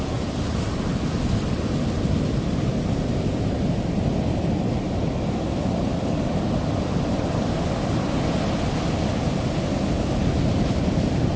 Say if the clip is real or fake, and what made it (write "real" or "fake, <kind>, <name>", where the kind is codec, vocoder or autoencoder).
real